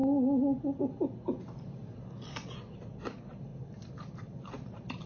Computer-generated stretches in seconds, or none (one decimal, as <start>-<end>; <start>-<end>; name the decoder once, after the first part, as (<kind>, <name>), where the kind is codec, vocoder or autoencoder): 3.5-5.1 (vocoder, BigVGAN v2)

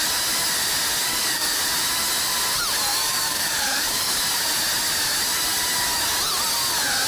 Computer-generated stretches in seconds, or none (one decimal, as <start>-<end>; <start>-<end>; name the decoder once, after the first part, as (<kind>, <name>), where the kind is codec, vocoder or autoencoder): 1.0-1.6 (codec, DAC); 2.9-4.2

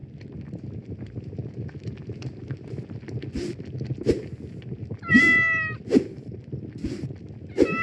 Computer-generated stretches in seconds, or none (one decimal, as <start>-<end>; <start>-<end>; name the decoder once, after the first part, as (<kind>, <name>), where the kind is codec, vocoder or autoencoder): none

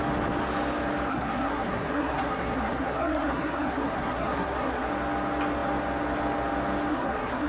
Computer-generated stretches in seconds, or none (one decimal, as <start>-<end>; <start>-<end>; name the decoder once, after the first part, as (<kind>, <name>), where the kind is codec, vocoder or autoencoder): 1.1-4.9 (codec, SNAC); 6.9-7.5